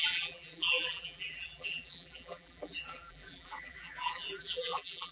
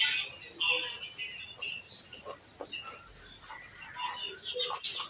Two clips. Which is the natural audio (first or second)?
second